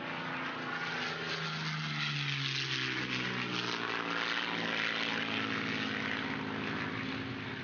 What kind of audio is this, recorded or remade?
recorded